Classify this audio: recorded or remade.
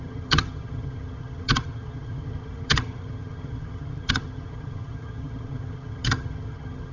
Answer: remade